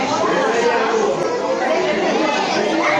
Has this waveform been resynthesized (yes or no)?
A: no